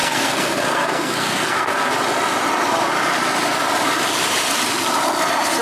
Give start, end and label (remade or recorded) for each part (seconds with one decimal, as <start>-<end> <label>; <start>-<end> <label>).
0.0-1.9 remade; 1.9-5.6 recorded